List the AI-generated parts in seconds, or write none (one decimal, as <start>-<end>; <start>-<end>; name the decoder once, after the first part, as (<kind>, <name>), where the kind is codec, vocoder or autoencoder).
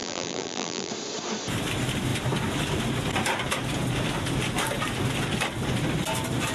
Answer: 0.0-0.9 (vocoder, BigVGAN v2)